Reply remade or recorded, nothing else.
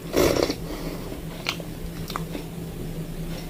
recorded